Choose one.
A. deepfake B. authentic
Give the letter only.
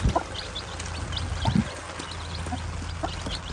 B